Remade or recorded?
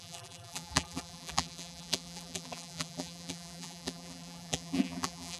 remade